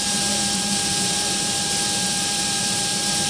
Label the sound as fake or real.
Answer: fake